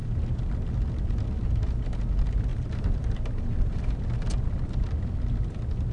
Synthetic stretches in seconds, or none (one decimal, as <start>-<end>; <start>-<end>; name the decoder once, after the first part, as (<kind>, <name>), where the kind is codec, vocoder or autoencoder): 2.5-4.0 (vocoder, BigVGAN v2)

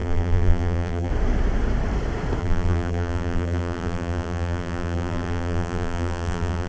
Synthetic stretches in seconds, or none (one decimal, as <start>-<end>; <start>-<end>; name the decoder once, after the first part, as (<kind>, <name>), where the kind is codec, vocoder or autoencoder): 0.0-1.1 (vocoder, BigVGAN v2); 2.4-6.7

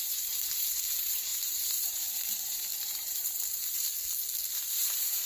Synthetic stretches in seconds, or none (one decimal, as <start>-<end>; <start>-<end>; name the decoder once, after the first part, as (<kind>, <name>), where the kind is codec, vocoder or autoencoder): 0.0-3.9 (vocoder, BigVGAN v2); 4.5-5.3

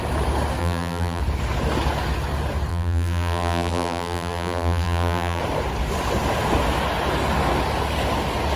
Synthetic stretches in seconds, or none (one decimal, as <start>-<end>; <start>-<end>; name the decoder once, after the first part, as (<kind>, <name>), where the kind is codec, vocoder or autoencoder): 0.6-1.2 (vocoder, BigVGAN v2); 2.7-5.4